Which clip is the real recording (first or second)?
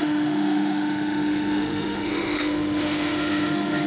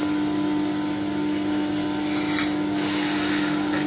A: second